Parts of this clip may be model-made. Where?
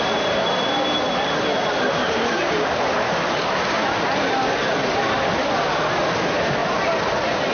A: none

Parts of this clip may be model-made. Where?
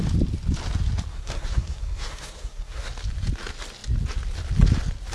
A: 1.1-2.9 (codec, SNAC)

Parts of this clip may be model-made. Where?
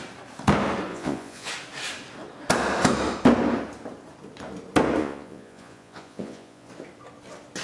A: 0.9-1.5 (vocoder, Vocos); 5.0-6.7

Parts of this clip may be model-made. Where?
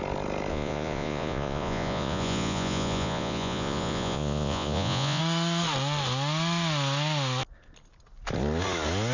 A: 0.5-5.2 (vocoder, Vocos)